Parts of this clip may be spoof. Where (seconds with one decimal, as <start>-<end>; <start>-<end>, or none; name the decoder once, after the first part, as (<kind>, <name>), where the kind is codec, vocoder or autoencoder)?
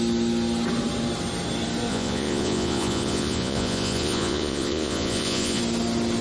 1.9-5.6 (vocoder, Vocos)